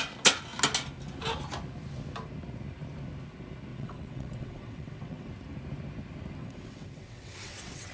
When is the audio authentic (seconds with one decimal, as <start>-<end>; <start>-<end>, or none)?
0.0-3.7; 5.3-6.4